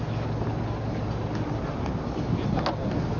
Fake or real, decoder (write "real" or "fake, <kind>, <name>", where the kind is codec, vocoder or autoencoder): real